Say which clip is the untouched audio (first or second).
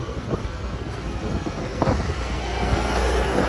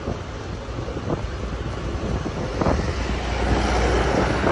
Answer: second